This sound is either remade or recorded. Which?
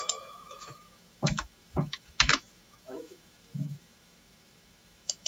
remade